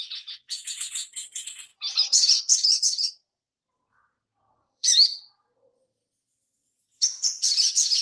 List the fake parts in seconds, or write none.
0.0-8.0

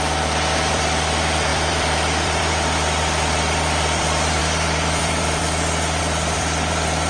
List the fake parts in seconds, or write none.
0.0-7.1

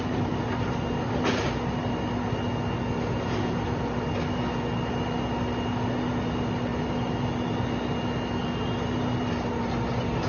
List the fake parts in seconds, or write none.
none

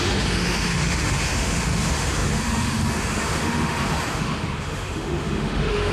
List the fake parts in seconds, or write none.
0.0-5.9

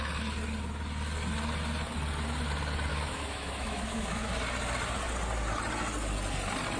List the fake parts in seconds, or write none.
2.9-4.3

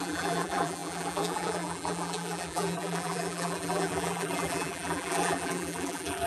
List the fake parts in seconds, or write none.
0.0-6.3

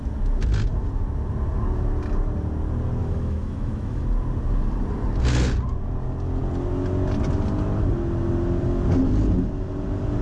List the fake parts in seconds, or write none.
3.0-4.0